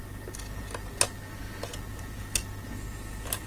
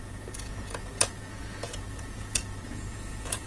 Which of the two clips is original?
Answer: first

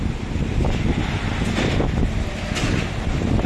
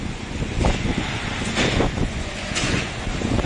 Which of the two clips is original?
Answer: first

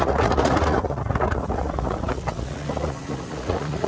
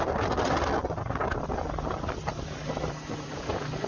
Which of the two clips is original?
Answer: second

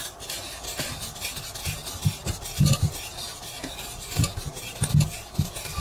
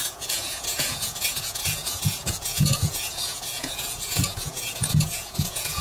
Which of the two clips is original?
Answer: first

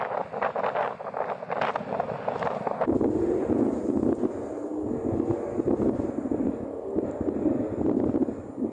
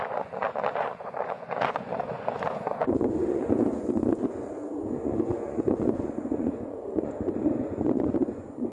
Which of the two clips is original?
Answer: first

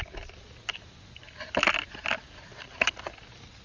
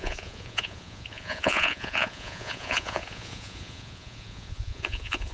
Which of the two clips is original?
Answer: first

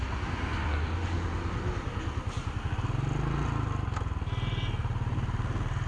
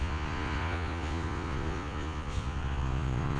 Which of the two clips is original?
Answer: first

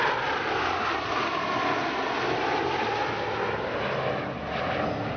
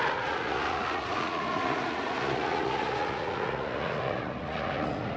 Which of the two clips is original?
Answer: first